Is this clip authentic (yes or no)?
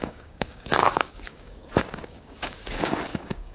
no